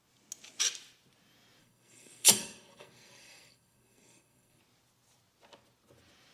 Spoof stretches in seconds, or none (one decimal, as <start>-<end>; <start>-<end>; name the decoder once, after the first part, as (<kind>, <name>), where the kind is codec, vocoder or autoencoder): 1.6-4.6 (codec, SNAC)